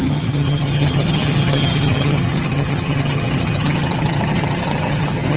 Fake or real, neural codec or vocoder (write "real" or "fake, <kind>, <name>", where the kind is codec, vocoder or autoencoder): fake, vocoder, HiFi-GAN